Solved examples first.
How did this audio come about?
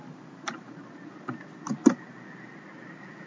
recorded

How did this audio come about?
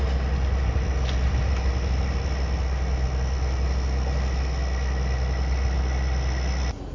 recorded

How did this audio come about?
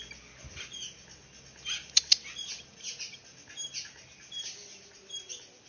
recorded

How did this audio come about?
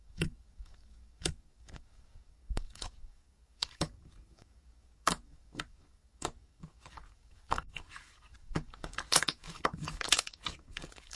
remade